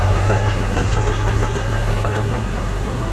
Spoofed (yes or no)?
yes